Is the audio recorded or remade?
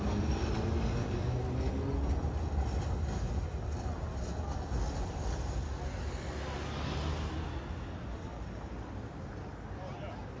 recorded